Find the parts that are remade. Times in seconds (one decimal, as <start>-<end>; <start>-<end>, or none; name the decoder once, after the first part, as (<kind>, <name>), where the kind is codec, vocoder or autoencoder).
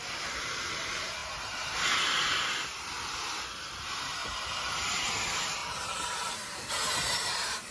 4.2-5.1 (vocoder, BigVGAN v2); 5.6-7.7